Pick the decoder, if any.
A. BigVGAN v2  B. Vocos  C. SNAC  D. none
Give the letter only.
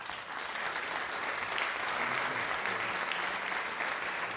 D